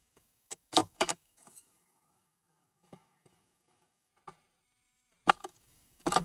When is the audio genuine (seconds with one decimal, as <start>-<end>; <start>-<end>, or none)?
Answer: 4.1-5.3